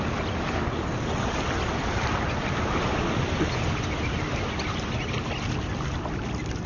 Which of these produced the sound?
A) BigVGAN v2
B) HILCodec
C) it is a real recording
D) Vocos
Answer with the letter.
C